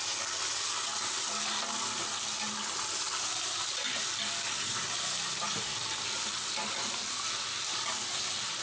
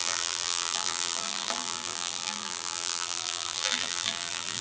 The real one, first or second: first